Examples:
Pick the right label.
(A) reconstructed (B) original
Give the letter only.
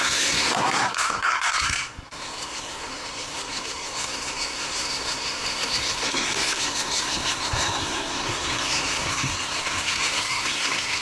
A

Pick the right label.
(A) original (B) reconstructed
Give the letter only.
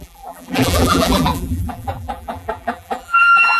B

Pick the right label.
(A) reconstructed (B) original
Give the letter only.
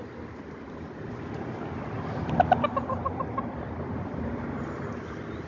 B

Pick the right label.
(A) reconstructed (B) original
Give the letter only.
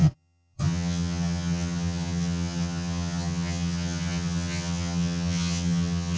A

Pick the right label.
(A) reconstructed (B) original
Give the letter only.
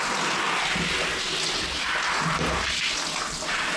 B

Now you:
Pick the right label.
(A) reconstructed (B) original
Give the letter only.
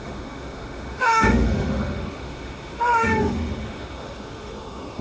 A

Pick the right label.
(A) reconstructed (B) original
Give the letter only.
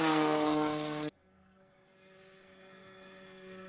A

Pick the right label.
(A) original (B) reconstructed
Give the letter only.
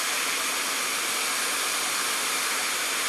A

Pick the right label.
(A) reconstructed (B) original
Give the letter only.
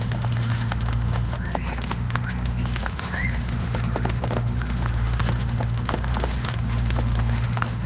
A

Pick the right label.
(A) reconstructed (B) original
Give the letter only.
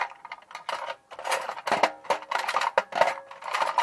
B